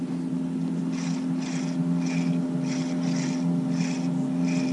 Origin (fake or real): real